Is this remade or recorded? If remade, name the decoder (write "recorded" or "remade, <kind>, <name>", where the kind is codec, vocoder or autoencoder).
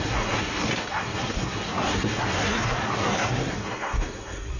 remade, codec, SNAC